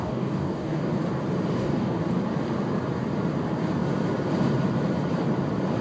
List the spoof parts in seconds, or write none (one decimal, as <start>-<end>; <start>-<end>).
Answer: 0.0-0.9; 1.6-2.0